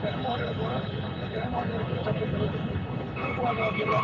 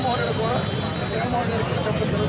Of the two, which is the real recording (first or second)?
second